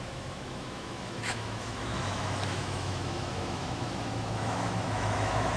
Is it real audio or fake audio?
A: fake